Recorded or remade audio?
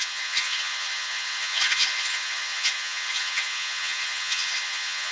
remade